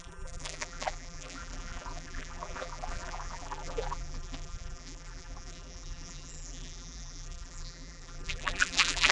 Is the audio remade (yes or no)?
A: yes